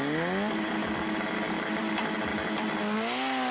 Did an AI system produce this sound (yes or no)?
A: no